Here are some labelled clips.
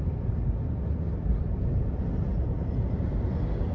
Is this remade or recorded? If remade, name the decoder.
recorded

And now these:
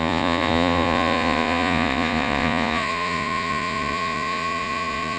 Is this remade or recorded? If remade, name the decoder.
remade, vocoder, Vocos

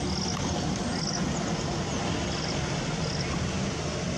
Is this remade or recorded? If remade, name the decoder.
recorded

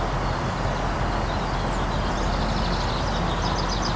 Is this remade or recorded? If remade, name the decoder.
recorded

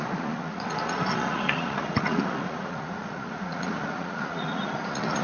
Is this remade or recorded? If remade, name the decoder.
remade, vocoder, Vocos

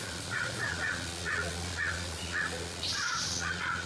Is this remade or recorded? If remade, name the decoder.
remade, vocoder, Vocos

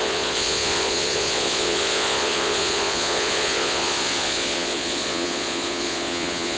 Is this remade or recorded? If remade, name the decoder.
remade, vocoder, Vocos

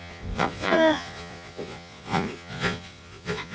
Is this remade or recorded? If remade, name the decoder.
remade, vocoder, Vocos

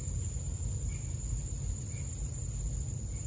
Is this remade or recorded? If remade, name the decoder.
recorded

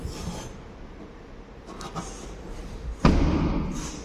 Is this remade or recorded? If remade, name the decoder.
recorded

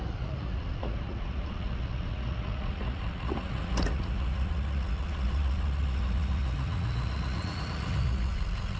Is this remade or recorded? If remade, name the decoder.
remade, vocoder, Vocos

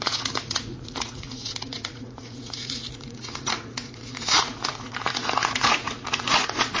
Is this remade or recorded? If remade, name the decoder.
remade, vocoder, Vocos